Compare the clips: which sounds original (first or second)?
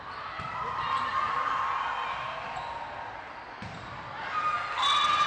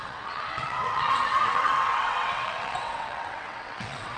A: first